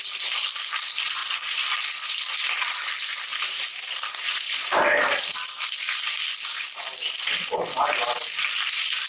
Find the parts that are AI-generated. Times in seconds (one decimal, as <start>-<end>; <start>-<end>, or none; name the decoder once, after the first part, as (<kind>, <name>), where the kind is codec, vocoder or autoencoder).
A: 3.3-4.8 (vocoder, BigVGAN v2)